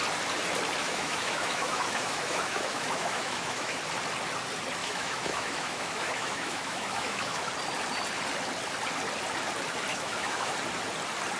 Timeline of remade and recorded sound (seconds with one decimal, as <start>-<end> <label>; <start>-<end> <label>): 0.0-0.8 recorded; 0.8-3.8 remade; 3.8-4.8 recorded; 4.8-7.5 remade; 7.5-9.9 recorded; 9.9-10.5 remade; 10.5-11.4 recorded